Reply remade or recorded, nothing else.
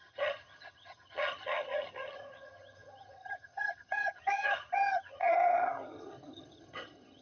remade